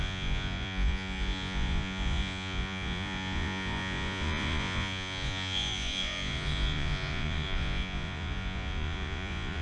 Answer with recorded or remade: remade